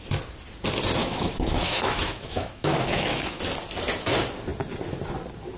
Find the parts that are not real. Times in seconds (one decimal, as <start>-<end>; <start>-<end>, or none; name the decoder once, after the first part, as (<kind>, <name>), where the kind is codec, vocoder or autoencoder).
1.0-3.4 (autoencoder, DAC-VAE)